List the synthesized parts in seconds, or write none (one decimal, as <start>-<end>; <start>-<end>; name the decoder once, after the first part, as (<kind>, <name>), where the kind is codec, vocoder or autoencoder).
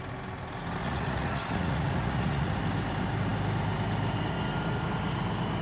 0.8-2.6 (vocoder, Vocos)